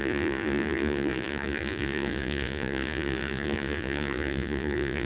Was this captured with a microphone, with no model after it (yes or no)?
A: no